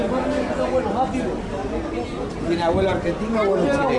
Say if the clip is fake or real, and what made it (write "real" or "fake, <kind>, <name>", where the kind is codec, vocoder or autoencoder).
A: real